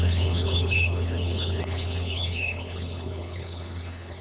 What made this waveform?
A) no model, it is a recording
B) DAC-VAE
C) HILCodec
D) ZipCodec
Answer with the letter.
C